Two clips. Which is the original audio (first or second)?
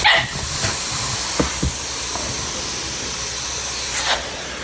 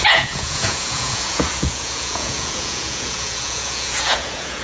first